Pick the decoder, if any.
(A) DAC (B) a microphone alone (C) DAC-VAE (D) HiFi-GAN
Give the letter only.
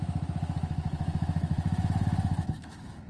C